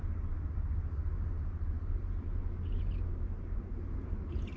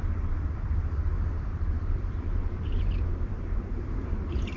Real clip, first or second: first